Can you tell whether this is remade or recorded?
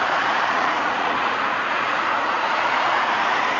remade